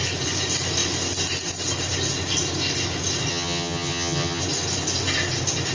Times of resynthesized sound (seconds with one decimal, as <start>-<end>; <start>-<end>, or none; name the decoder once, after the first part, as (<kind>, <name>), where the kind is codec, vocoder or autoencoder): 3.3-4.4 (vocoder, HiFi-GAN)